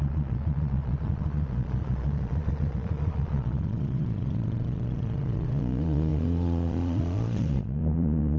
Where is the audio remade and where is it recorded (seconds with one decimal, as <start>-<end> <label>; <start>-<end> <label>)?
0.0-8.4 remade